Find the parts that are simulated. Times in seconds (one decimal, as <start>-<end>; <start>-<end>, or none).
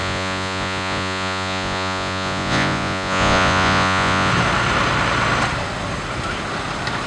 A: 0.0-4.3